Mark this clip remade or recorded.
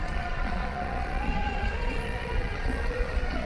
remade